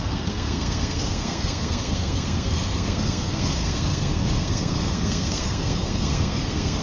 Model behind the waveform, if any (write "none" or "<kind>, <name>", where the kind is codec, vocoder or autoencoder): codec, SNAC